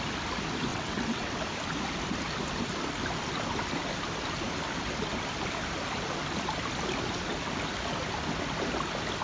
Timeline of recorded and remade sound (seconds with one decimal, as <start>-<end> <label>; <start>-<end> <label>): 0.0-0.7 recorded; 0.7-1.3 remade; 1.3-9.2 recorded